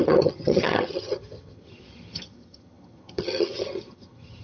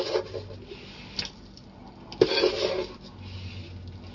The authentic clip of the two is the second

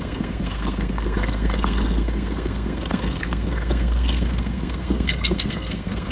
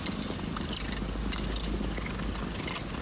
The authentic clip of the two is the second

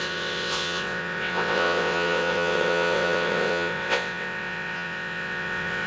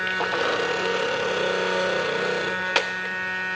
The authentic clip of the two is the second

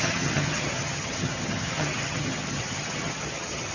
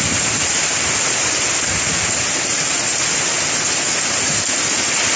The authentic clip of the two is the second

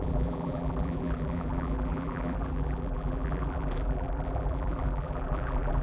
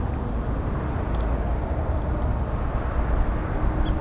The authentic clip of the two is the second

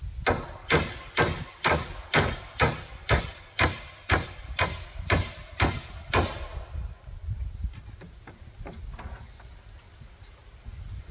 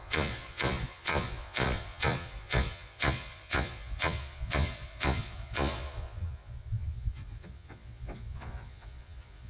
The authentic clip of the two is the first